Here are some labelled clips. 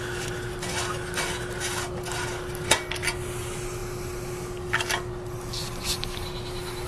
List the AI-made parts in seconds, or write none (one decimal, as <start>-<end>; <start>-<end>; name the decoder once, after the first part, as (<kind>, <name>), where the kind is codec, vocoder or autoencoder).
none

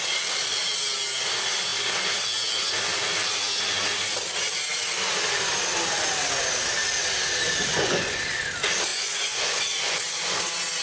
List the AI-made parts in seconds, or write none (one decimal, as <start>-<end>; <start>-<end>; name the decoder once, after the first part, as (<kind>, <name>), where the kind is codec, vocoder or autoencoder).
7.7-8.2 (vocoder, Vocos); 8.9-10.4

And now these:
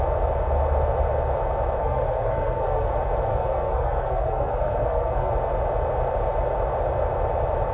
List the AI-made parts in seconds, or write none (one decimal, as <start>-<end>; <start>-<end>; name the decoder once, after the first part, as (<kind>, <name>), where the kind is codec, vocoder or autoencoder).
1.8-2.9 (codec, SNAC); 3.3-5.3

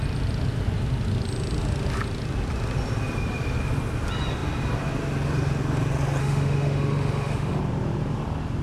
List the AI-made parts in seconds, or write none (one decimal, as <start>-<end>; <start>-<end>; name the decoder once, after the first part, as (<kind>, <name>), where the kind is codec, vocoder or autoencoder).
6.2-7.6 (autoencoder, DAC-VAE)

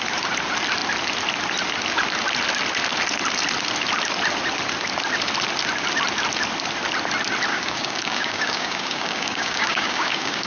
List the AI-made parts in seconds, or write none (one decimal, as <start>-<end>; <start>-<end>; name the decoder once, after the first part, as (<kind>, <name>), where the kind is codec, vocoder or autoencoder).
7.5-10.5 (codec, DAC)

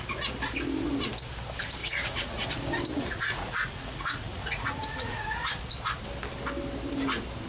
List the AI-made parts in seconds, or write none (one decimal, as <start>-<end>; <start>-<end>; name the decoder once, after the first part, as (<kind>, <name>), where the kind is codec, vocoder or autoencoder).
1.8-2.5 (vocoder, Vocos); 2.9-5.6